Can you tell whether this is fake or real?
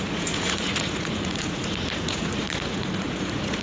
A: fake